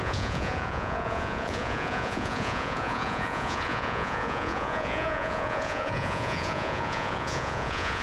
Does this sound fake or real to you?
fake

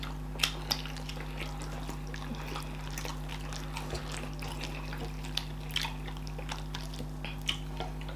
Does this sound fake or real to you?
real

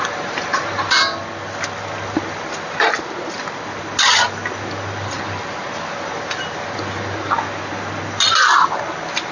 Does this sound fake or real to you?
real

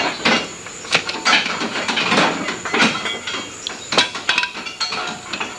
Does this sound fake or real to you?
real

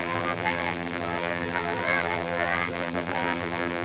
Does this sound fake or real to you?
fake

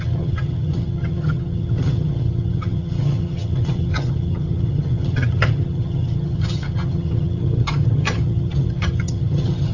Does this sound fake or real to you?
fake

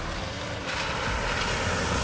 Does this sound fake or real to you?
real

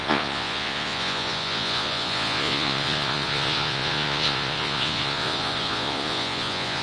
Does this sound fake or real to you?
fake